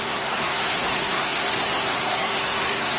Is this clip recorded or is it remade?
remade